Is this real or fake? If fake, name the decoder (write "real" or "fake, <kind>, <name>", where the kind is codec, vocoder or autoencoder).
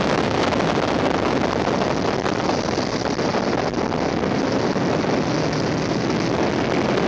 real